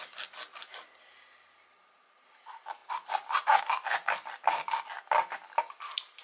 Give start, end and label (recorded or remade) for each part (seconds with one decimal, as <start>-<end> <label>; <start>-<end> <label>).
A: 0.0-6.2 recorded